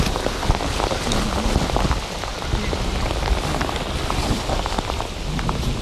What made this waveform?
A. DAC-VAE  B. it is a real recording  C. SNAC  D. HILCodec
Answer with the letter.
B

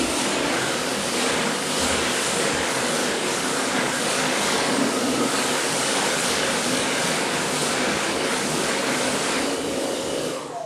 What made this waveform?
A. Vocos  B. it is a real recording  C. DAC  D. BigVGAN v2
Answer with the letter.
C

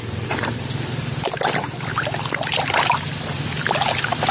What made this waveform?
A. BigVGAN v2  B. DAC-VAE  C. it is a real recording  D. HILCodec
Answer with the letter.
C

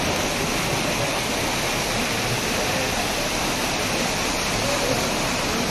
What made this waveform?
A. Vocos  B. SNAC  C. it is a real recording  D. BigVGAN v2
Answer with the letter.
C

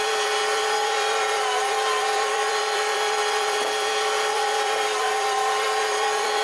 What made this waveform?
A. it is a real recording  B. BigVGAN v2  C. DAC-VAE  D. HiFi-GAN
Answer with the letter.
B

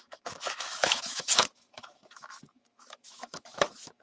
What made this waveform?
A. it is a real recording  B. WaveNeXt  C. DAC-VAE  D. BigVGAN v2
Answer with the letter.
C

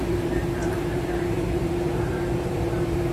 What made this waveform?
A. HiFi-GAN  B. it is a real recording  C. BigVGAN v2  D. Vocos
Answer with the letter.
C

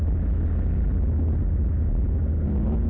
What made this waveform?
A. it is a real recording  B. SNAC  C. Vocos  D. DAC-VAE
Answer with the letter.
A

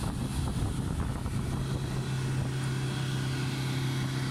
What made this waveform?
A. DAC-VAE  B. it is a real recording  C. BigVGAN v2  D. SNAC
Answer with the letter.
B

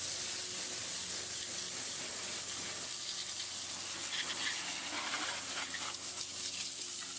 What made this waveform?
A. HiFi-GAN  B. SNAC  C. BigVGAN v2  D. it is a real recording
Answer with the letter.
D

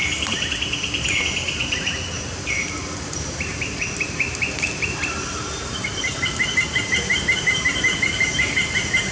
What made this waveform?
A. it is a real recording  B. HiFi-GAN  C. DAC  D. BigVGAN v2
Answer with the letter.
D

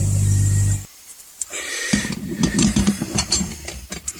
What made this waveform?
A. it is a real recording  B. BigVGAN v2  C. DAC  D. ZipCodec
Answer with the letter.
B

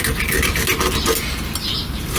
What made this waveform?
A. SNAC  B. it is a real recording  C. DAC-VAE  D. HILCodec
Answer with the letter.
B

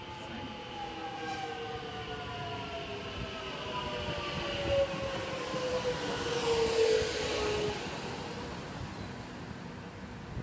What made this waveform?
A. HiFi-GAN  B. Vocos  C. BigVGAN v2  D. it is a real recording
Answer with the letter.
D